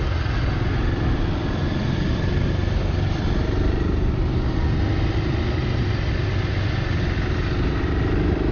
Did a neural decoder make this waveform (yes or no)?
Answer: no